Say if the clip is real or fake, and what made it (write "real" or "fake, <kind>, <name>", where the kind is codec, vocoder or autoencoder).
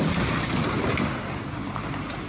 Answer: real